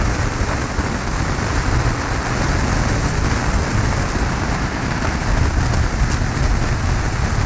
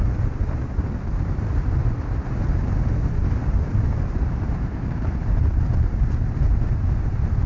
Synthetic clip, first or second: second